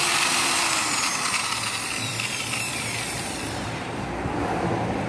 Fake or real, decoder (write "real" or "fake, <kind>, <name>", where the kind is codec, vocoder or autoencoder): fake, vocoder, BigVGAN v2